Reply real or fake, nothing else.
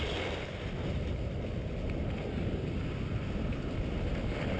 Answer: real